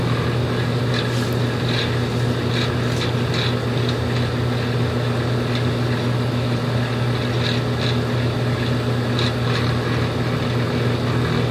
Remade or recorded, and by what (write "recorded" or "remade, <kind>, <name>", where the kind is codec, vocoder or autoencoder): recorded